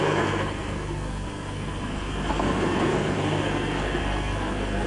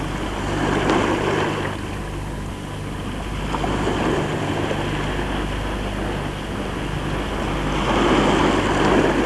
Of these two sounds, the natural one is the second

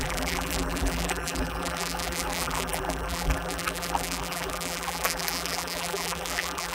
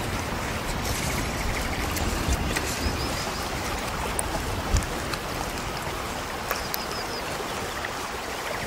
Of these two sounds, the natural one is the second